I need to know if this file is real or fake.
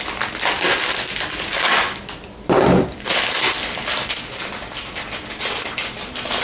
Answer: real